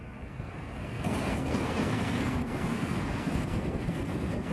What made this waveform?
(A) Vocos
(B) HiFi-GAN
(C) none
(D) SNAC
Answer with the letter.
D